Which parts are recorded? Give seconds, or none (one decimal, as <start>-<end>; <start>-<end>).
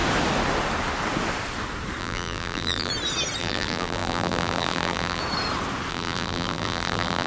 0.0-2.0; 2.9-3.4; 5.2-5.9